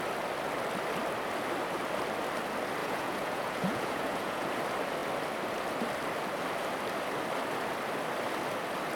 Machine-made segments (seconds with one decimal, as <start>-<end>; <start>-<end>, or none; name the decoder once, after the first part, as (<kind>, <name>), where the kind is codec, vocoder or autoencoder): 2.8-4.6 (vocoder, Vocos)